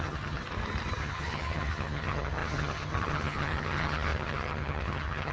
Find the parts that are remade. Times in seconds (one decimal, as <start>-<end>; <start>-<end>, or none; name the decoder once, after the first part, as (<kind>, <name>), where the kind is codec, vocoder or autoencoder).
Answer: 0.0-0.4 (vocoder, HiFi-GAN); 1.0-5.3